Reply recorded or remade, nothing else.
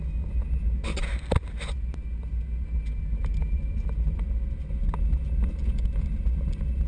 recorded